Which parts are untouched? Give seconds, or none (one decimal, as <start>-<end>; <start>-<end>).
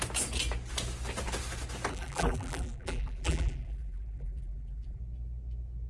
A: 0.0-1.9; 5.0-5.9